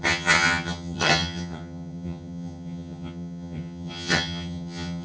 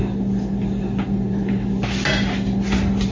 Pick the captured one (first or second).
second